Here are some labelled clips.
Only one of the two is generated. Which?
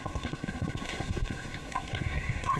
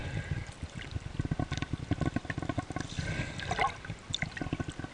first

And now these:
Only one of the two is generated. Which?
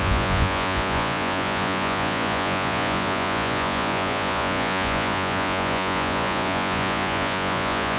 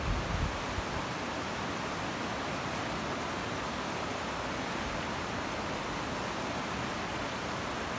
first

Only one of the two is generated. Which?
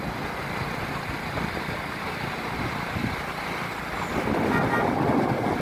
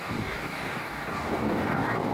second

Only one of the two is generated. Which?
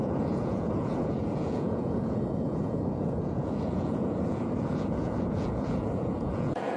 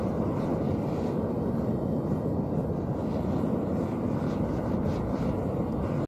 first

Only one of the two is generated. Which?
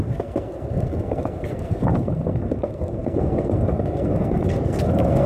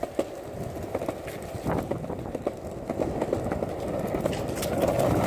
first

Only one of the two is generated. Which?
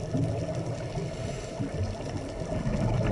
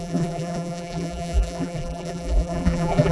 second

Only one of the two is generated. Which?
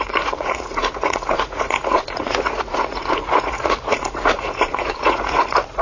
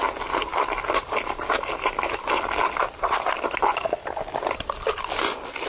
first